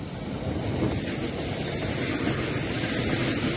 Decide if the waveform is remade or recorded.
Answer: recorded